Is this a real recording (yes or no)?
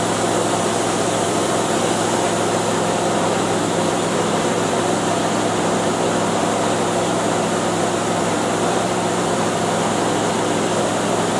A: no